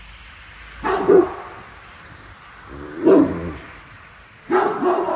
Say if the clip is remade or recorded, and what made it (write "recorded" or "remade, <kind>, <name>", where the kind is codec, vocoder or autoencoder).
recorded